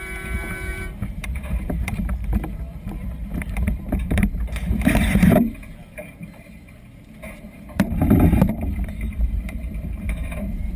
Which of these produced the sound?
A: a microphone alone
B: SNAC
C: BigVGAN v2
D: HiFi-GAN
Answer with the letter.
C